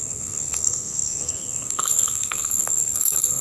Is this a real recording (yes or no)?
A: no